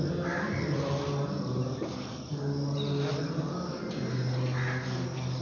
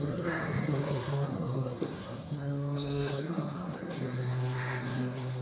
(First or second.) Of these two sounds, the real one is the first